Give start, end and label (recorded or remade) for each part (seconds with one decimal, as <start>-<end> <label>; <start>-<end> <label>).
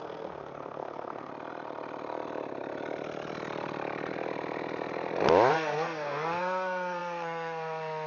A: 0.0-1.3 remade; 1.3-5.5 recorded; 5.5-8.1 remade